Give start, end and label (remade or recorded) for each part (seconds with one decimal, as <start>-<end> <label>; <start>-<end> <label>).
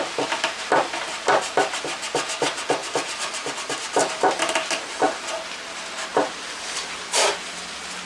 0.0-2.8 recorded; 2.8-5.3 remade; 5.3-6.1 recorded; 6.1-7.3 remade; 7.3-8.1 recorded